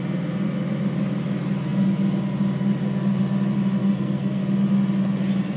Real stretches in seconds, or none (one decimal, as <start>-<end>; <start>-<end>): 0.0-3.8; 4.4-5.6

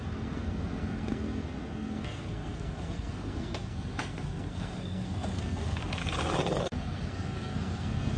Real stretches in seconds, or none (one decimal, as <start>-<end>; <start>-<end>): 6.0-6.6

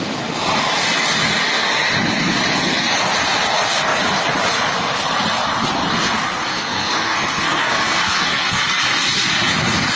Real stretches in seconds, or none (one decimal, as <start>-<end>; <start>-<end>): 0.0-6.5; 8.8-9.9